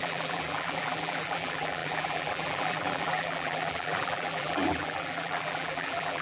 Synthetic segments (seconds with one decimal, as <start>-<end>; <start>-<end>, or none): 0.0-6.2